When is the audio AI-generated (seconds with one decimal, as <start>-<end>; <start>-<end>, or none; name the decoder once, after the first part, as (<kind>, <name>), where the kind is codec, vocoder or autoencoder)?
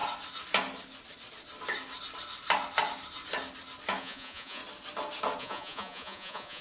4.0-4.6 (vocoder, Vocos); 5.4-6.6